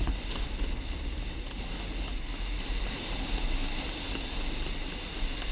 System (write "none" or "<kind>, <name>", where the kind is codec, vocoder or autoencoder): none